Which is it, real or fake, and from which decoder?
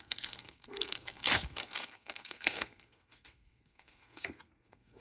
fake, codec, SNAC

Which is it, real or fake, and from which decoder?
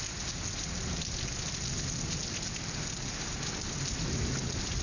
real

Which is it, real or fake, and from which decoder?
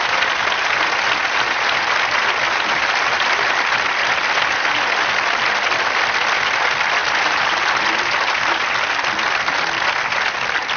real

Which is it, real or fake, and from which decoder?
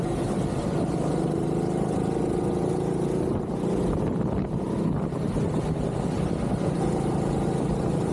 real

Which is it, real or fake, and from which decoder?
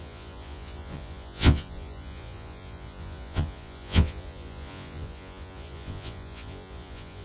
fake, vocoder, Vocos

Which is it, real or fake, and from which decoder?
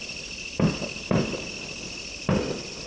real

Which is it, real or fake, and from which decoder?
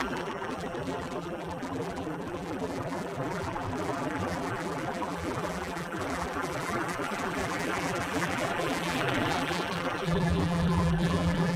fake, vocoder, BigVGAN v2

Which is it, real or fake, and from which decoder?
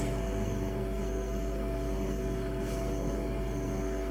fake, codec, SNAC